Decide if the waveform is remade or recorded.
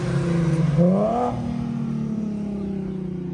recorded